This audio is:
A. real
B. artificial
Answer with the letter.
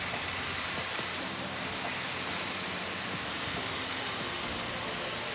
A